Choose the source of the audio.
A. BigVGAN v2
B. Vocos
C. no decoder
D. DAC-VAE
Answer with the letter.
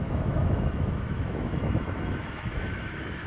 D